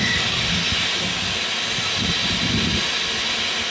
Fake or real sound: real